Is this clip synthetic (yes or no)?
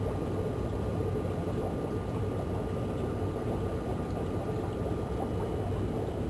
no